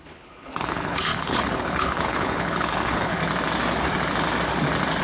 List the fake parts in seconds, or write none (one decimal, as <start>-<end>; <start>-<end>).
0.0-3.2